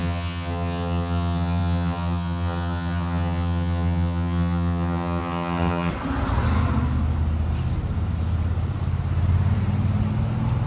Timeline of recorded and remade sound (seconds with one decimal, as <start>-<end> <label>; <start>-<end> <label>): 0.0-5.9 remade; 5.9-10.7 recorded